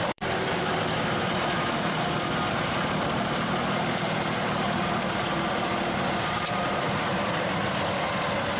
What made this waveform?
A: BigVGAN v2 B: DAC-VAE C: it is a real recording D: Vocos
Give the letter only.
A